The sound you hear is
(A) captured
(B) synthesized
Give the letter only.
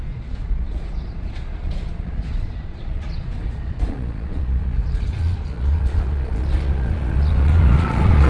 B